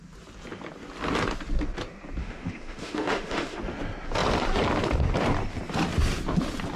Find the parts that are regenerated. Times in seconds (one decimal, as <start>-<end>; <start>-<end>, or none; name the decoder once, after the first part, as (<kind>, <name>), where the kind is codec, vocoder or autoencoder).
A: 2.2-3.6 (autoencoder, DAC-VAE)